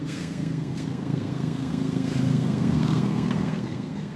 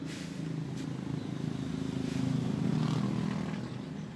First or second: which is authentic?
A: second